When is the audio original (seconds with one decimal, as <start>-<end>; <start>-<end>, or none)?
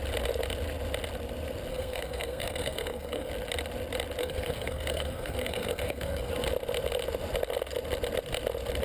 0.0-1.7; 3.3-4.2; 6.3-8.8